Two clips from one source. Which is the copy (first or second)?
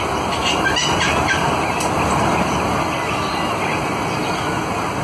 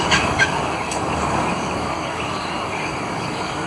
second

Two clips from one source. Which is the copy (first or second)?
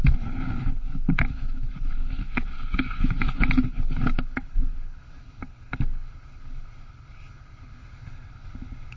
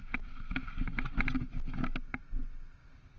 first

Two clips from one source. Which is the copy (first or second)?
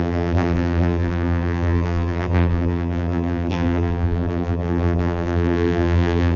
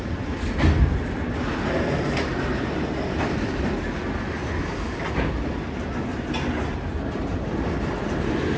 first